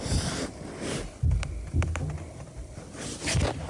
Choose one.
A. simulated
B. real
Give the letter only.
B